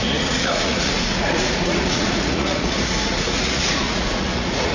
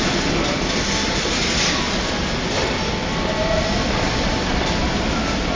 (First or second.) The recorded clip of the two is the second